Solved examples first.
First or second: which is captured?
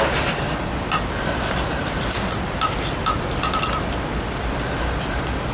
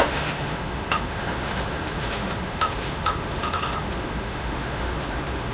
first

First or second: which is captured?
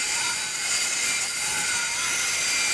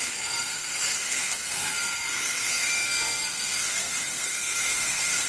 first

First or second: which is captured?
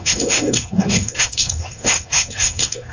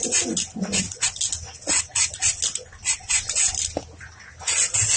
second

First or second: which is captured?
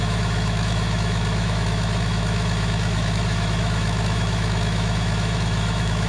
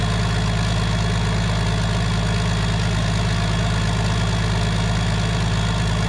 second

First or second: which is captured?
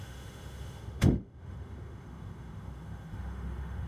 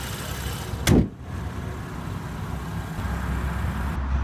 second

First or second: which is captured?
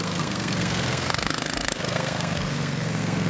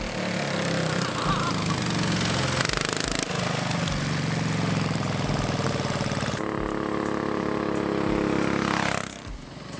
second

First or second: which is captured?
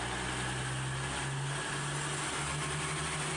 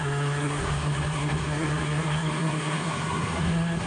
first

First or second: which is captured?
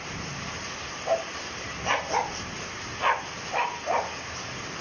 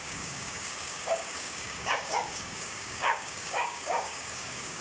first